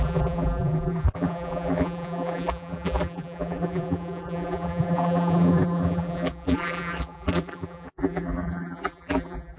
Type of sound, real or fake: fake